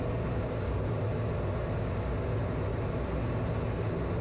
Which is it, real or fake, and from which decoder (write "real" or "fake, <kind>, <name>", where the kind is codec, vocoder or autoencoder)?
real